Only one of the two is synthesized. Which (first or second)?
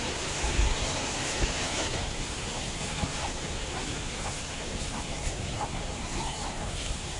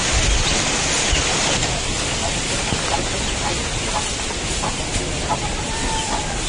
first